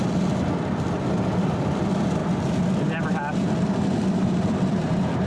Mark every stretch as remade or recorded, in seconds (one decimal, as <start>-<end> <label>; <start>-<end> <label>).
0.0-1.3 recorded; 1.3-2.2 remade; 2.2-3.0 recorded; 3.0-5.3 remade